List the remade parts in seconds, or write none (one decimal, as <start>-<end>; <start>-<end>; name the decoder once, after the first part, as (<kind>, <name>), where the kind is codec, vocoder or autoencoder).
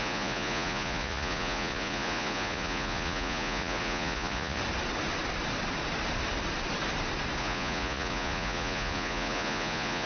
0.0-4.6 (vocoder, Vocos); 7.4-10.1